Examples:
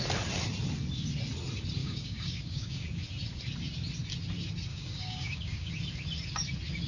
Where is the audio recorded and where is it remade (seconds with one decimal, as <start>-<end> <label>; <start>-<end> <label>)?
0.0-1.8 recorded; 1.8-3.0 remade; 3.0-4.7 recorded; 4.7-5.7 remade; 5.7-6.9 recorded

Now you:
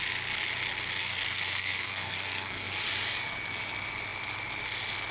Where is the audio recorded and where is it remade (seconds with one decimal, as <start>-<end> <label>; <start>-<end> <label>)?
0.0-1.0 recorded; 1.0-2.7 remade; 2.7-5.1 recorded

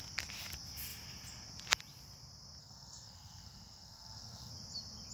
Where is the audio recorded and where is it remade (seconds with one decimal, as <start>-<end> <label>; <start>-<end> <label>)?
0.0-2.6 recorded; 2.6-4.5 remade; 4.5-5.1 recorded